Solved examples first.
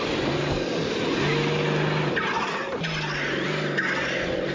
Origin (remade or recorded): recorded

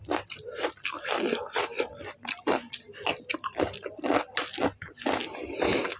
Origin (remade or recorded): recorded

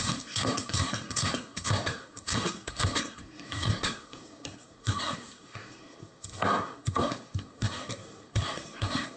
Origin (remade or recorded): remade